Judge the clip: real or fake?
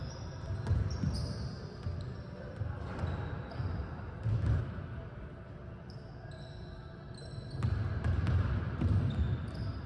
real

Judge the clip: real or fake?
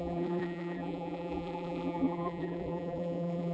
fake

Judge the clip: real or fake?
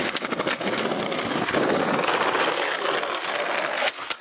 real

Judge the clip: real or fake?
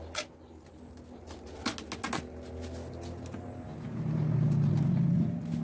real